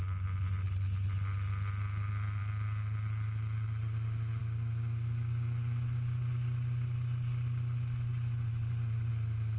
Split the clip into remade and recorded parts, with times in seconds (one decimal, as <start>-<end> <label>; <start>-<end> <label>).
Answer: 0.0-9.6 recorded